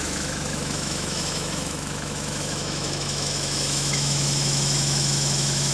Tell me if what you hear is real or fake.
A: fake